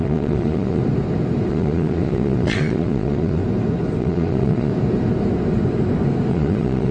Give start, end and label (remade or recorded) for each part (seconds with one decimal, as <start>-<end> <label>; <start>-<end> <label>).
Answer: 0.0-0.8 remade; 0.8-1.5 recorded; 1.5-3.4 remade; 3.4-4.0 recorded; 4.0-4.7 remade; 4.7-6.3 recorded; 6.3-6.9 remade